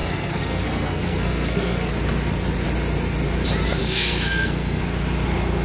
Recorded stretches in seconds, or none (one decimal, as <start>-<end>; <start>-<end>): 1.9-3.8; 4.8-5.6